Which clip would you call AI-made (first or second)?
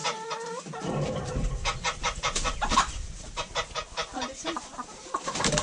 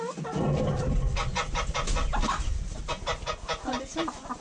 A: first